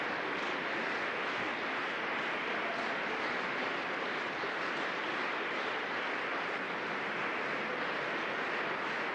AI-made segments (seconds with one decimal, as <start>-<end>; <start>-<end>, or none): 5.1-7.2